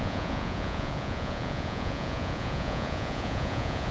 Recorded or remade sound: remade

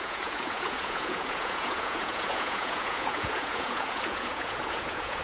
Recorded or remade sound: remade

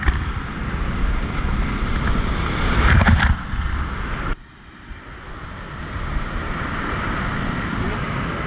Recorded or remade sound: recorded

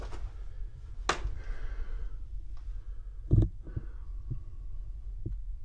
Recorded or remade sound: recorded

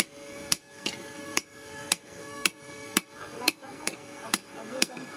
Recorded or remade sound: remade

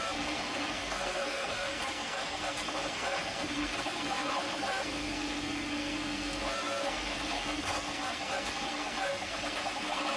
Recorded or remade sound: remade